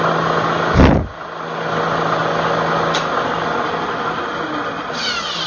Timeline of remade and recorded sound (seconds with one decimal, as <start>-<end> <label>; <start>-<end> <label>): 0.0-5.5 recorded